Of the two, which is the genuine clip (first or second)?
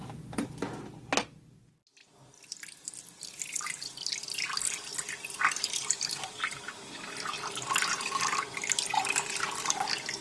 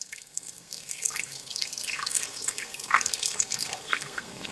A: first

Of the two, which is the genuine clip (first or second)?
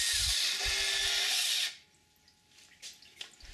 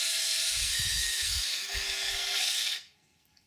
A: first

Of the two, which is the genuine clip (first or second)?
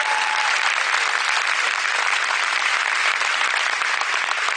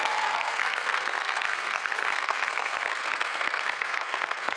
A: first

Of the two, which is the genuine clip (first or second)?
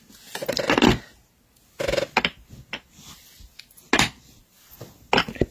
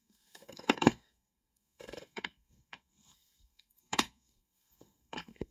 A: first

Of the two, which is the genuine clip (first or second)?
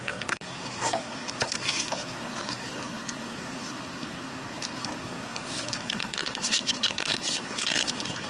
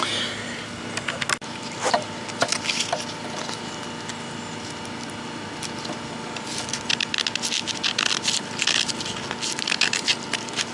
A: second